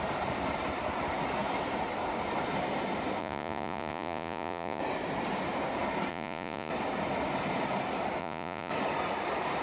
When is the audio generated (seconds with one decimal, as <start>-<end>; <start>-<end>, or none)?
3.2-4.8; 6.1-6.7; 8.2-8.7